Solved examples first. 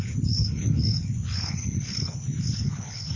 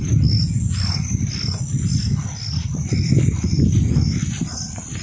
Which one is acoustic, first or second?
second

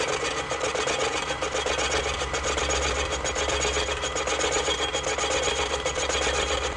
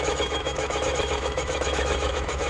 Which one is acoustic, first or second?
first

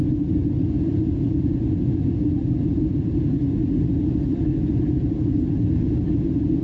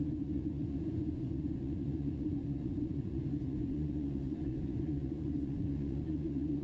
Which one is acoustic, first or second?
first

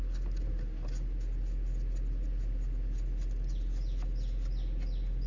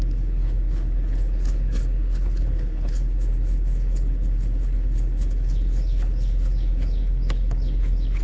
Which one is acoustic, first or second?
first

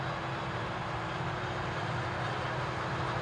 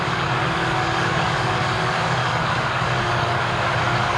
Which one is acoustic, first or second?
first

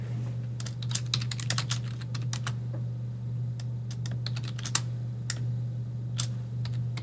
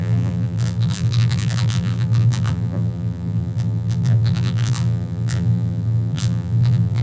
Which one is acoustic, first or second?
first